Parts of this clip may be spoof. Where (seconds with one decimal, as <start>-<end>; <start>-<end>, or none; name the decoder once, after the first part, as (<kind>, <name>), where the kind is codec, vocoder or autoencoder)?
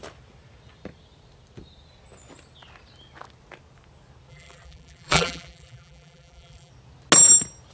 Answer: 4.3-6.7 (vocoder, BigVGAN v2)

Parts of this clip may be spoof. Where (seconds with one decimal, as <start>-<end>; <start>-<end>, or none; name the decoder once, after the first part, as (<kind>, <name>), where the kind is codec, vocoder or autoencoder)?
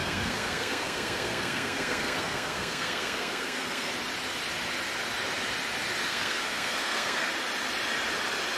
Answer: 0.0-3.9 (codec, SNAC); 6.1-7.3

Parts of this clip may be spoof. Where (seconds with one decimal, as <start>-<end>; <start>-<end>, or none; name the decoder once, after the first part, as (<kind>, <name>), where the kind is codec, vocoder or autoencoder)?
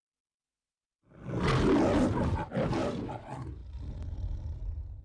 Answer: none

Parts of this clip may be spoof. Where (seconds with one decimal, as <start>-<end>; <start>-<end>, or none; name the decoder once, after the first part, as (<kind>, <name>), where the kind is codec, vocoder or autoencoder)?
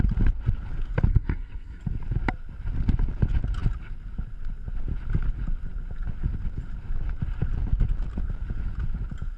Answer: 1.1-1.8 (codec, SNAC)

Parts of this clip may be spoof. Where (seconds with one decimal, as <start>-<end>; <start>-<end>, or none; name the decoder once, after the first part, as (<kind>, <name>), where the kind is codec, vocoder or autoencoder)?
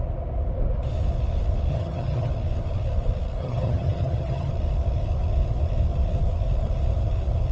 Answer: 1.7-2.3 (vocoder, HiFi-GAN); 3.4-4.5